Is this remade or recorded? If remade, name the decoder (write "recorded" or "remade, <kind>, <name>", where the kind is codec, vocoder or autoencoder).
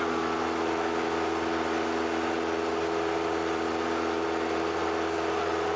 recorded